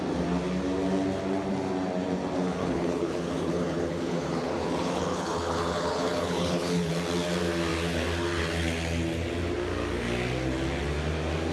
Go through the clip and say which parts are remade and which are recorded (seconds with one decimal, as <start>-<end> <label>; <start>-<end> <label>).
0.0-2.4 recorded; 2.4-6.9 remade; 6.9-11.5 recorded

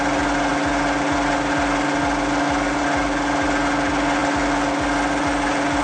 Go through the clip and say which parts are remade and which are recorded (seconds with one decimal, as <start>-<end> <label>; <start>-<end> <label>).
0.0-5.8 recorded

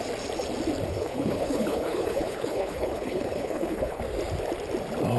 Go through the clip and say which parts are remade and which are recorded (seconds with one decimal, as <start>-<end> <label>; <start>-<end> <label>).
0.0-0.9 recorded; 0.9-4.0 remade; 4.0-5.2 recorded

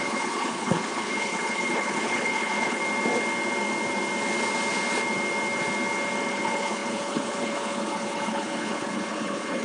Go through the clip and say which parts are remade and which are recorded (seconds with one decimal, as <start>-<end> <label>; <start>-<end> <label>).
0.0-2.8 remade; 2.8-6.3 recorded; 6.3-9.6 remade